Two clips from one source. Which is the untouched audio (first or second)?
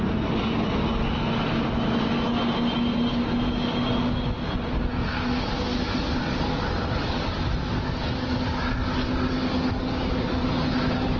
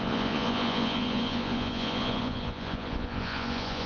first